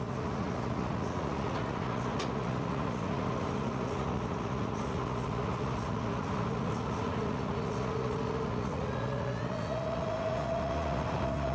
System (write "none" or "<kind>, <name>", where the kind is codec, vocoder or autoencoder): vocoder, Vocos